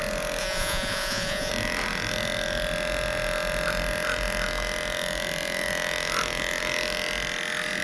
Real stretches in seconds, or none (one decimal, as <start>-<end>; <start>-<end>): 0.0-0.4; 1.5-7.8